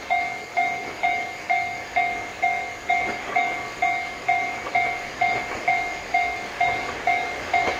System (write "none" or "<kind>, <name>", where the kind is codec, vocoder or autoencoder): codec, DAC